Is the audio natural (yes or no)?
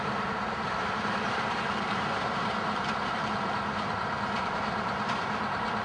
no